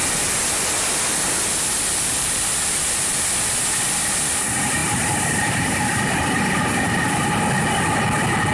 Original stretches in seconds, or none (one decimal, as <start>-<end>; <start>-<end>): 0.0-4.8; 7.4-8.5